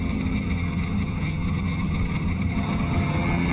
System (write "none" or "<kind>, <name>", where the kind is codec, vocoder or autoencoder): vocoder, HiFi-GAN